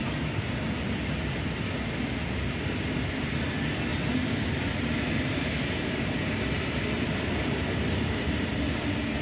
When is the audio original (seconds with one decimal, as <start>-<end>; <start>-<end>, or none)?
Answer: 0.0-9.2